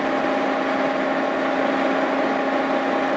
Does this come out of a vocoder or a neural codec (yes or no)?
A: no